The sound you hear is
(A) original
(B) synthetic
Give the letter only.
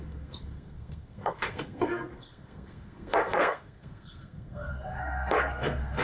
B